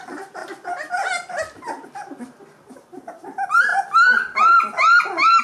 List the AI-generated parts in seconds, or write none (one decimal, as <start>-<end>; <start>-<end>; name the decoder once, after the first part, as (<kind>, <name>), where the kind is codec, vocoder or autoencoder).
none